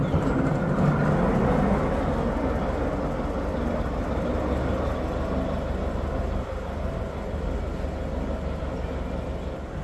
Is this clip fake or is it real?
real